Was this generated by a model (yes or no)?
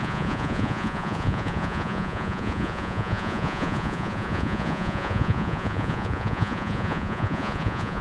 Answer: yes